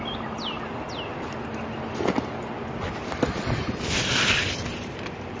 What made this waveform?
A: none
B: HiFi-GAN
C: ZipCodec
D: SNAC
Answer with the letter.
A